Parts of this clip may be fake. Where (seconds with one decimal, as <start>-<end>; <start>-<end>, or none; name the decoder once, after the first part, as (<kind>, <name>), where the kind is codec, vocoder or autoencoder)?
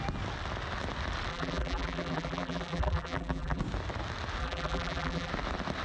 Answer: 1.3-3.6 (vocoder, BigVGAN v2); 4.4-5.3